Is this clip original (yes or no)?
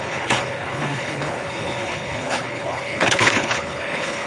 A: no